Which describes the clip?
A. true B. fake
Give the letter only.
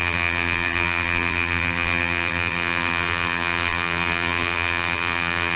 B